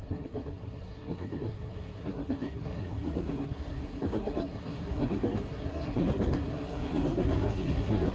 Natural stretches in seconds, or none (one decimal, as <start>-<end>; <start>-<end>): none